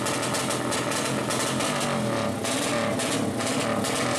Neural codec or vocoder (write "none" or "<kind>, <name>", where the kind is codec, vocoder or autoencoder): none